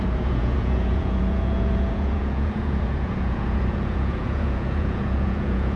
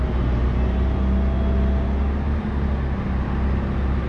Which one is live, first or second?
second